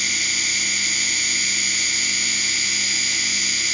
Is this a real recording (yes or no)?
yes